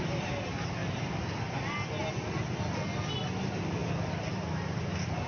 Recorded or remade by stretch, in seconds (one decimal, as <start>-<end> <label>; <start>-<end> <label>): 0.0-5.3 recorded